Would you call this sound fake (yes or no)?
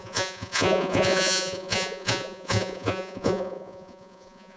yes